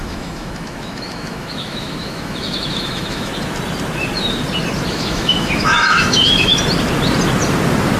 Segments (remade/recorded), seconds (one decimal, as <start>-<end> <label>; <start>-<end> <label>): 0.0-3.3 remade; 3.3-4.9 recorded; 4.9-6.5 remade; 6.5-8.0 recorded